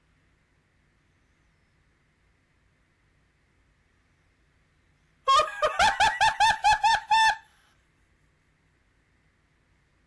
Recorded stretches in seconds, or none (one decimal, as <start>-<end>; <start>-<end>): 0.0-3.9; 7.8-10.1